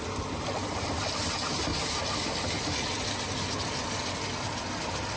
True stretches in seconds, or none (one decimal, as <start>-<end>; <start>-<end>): 0.0-5.2